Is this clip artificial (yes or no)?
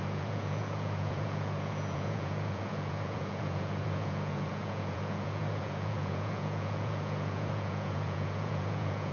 yes